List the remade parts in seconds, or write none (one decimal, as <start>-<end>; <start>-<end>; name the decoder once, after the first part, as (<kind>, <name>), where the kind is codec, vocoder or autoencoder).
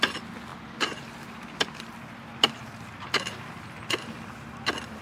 none